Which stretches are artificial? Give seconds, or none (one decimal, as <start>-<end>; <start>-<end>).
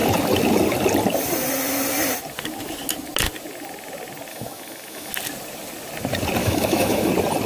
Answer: 4.3-5.1; 6.4-7.1